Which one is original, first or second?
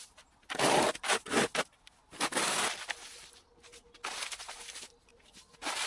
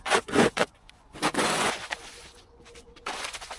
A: first